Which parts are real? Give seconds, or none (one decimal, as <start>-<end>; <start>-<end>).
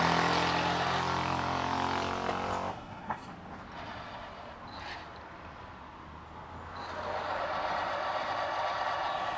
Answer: 0.0-2.7; 3.3-9.4